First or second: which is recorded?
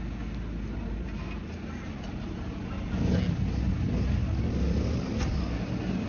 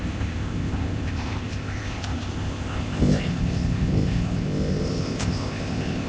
first